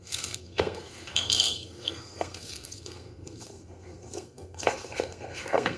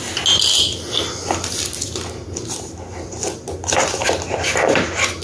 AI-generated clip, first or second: first